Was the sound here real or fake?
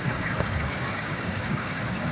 fake